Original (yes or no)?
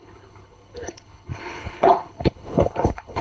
no